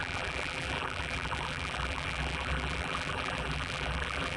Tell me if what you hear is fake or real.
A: fake